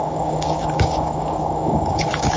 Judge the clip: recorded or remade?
remade